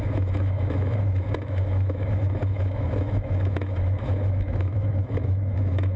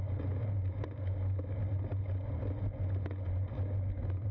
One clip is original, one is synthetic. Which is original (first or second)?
second